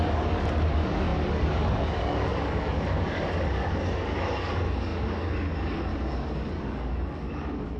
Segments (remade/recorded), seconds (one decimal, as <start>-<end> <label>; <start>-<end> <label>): 0.0-7.8 remade